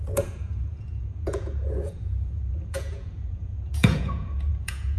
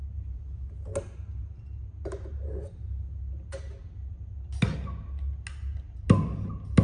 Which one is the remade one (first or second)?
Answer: first